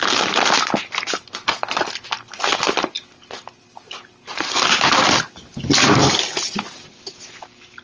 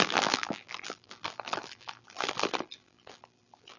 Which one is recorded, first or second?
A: first